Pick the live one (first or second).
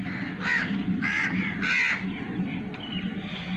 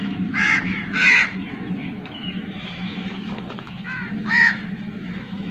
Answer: first